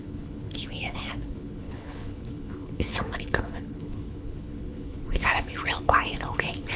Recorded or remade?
remade